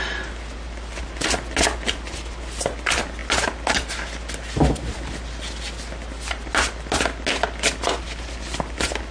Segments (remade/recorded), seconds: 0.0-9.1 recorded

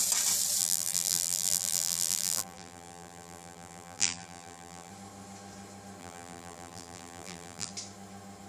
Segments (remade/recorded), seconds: 0.0-0.6 recorded; 0.6-4.9 remade; 4.9-6.0 recorded; 6.0-7.7 remade; 7.7-8.5 recorded

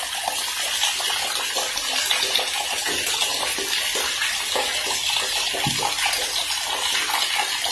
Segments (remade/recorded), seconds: 0.0-7.7 recorded

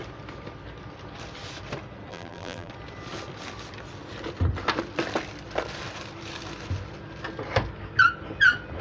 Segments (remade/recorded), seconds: 0.0-2.1 recorded; 2.1-2.7 remade; 2.7-8.8 recorded

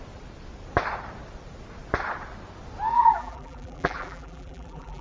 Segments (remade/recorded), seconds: 0.0-2.9 recorded; 2.9-5.0 remade

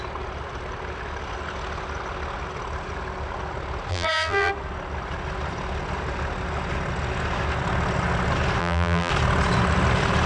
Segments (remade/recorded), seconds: 0.0-3.9 recorded; 3.9-4.5 remade; 4.5-8.6 recorded; 8.6-9.1 remade; 9.1-10.3 recorded

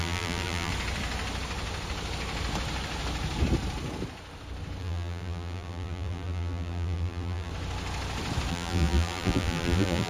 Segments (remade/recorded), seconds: 0.0-0.7 remade; 0.7-4.8 recorded; 4.8-7.5 remade; 7.5-8.5 recorded; 8.5-10.1 remade